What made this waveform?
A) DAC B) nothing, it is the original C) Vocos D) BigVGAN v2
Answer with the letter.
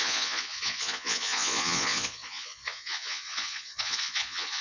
C